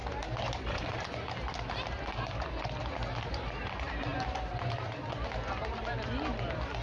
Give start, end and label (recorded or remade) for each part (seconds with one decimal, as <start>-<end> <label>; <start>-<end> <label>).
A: 0.0-6.8 recorded

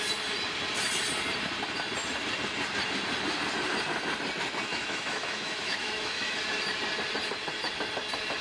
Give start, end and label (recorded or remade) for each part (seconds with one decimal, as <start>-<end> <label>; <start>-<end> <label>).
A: 0.0-4.7 recorded; 4.7-6.4 remade; 6.4-8.4 recorded

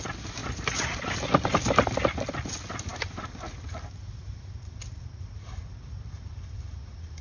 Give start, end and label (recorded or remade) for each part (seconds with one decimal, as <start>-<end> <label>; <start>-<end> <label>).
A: 0.0-7.2 recorded

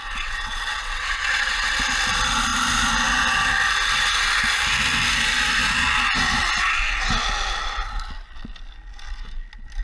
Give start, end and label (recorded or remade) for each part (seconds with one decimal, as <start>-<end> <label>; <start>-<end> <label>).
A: 0.0-1.8 remade; 1.8-9.8 recorded

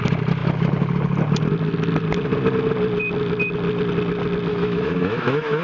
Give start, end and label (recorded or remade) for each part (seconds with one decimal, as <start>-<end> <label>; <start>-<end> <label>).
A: 0.0-4.5 recorded; 4.5-5.6 remade

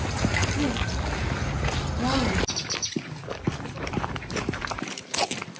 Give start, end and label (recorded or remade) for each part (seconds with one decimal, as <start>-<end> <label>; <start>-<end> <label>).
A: 0.0-0.4 remade; 0.4-3.8 recorded; 3.8-5.6 remade